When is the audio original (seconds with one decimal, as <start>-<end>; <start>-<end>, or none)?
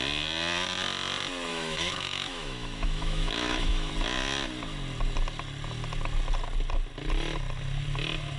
0.0-1.5; 3.9-8.4